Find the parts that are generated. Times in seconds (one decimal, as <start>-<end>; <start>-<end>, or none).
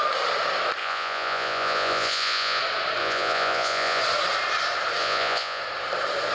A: 0.8-2.6; 3.0-4.0; 5.0-5.6